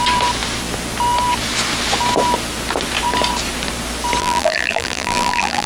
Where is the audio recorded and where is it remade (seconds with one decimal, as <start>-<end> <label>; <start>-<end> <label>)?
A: 0.0-4.2 recorded; 4.2-5.7 remade